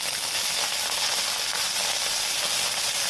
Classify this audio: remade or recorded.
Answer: recorded